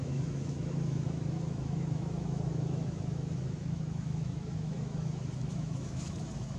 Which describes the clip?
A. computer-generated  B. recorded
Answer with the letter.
A